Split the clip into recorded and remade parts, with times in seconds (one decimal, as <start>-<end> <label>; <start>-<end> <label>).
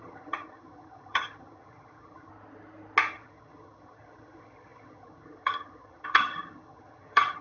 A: 0.0-2.3 remade; 2.3-3.1 recorded; 3.1-7.4 remade